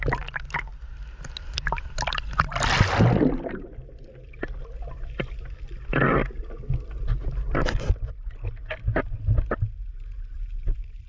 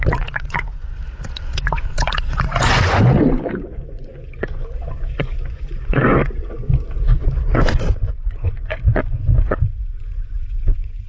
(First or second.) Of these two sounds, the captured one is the first